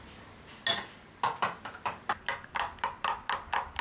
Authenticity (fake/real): real